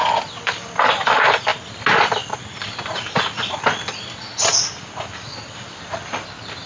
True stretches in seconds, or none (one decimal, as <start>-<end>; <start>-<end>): 0.0-6.7